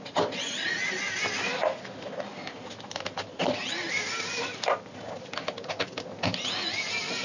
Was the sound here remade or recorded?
recorded